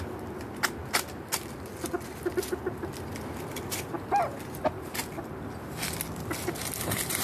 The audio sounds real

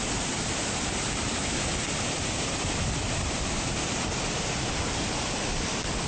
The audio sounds fake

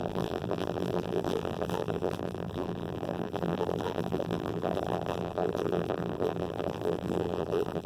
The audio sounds fake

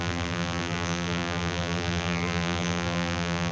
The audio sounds fake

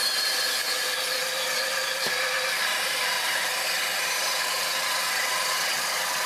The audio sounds real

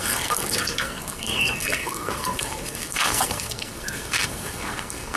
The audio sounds fake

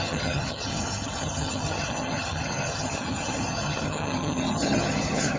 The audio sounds fake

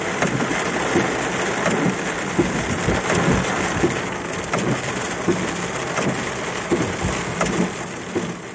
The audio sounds real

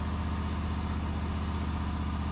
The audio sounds real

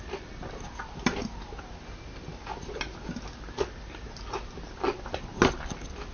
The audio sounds real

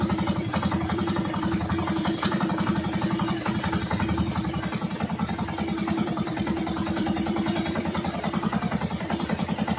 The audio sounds fake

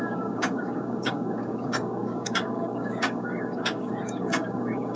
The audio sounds fake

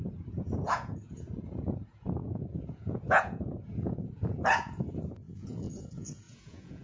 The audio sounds fake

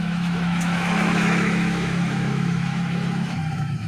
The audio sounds fake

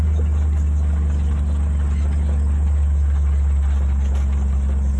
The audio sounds real